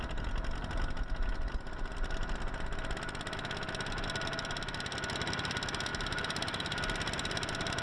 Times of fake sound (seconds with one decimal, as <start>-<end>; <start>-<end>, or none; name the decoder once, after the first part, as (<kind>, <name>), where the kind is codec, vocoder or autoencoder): none